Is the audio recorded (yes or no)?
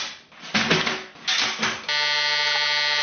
yes